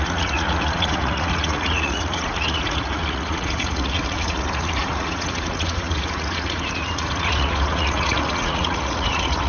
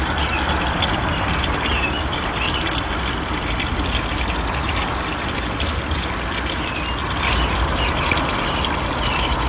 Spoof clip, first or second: first